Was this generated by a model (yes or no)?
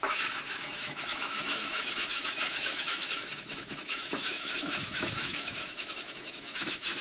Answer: yes